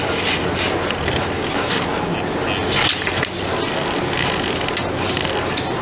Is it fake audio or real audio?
real